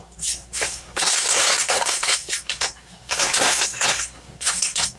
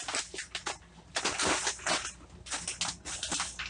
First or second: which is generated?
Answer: first